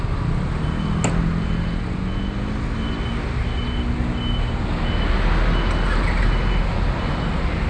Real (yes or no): yes